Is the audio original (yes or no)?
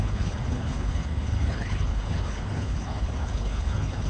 no